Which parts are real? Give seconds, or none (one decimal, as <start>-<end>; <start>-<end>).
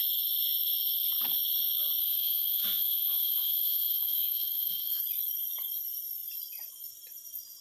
0.0-2.0; 5.0-7.6